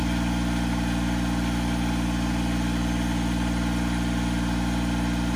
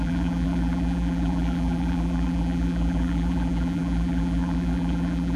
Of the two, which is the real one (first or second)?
first